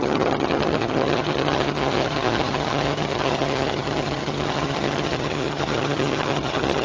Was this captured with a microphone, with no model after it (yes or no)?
no